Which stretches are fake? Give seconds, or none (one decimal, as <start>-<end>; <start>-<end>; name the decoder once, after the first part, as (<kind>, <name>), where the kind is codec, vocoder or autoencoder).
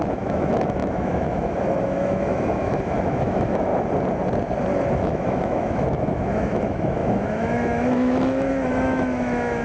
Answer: 0.0-3.7 (autoencoder, DAC-VAE); 4.9-9.6